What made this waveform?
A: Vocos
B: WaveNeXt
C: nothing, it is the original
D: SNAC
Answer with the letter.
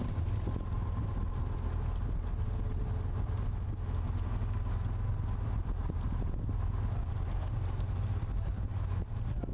C